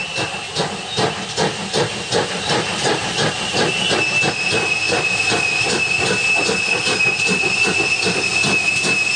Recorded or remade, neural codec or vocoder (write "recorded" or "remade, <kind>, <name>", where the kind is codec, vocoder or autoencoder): recorded